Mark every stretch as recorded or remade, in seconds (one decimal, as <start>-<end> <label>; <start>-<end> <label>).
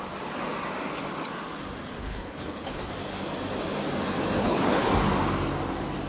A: 0.0-2.0 recorded; 2.0-2.9 remade; 2.9-4.4 recorded; 4.4-4.9 remade; 4.9-6.1 recorded